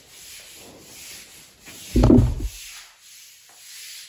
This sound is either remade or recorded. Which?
recorded